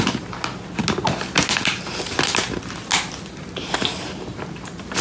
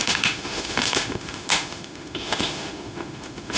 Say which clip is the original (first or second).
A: first